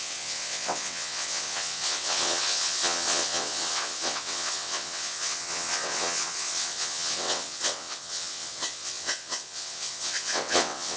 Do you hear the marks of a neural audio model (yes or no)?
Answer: yes